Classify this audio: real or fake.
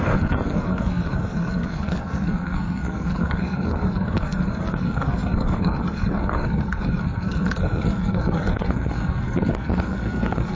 fake